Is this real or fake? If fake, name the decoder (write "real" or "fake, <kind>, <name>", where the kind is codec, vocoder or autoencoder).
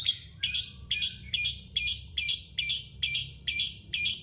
fake, vocoder, BigVGAN v2